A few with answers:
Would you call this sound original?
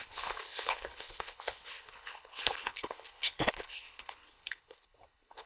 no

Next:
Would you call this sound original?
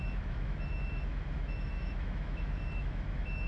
no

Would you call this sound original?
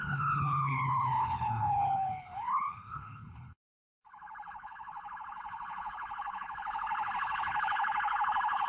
no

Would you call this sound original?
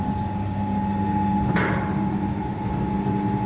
yes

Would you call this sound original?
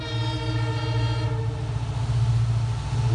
yes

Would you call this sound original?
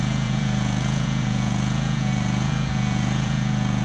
no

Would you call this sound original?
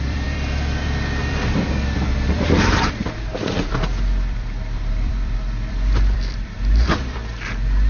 no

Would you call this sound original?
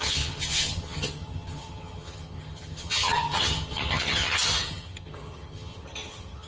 no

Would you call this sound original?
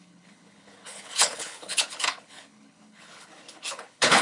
no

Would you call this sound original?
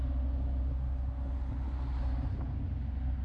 yes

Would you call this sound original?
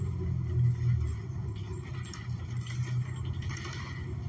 yes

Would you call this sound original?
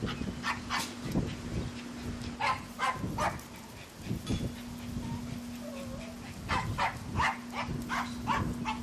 yes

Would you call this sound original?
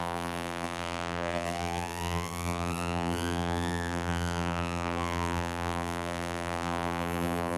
no